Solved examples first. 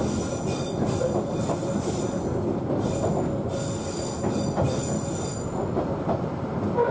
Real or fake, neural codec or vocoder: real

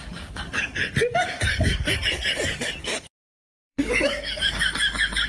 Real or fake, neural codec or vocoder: fake, codec, DAC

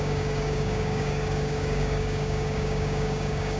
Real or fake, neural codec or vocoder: fake, codec, DAC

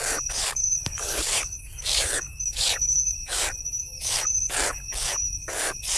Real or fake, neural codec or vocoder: fake, codec, DAC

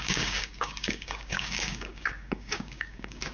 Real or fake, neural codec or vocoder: fake, codec, DAC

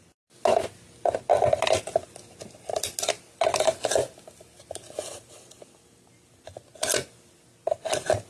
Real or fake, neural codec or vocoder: real